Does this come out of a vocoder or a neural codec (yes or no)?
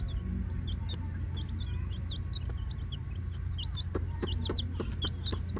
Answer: no